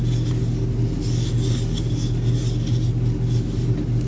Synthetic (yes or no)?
no